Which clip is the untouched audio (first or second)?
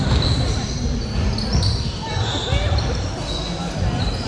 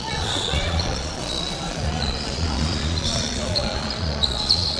first